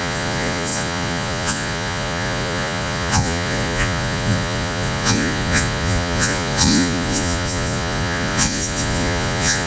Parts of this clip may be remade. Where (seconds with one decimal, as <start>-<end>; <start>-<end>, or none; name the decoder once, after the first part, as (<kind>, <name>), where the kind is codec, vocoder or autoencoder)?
0.0-9.7 (vocoder, Vocos)